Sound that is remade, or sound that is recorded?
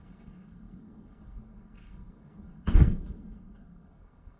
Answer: remade